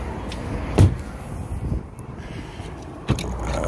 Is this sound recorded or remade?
recorded